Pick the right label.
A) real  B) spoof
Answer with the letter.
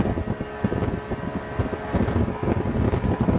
A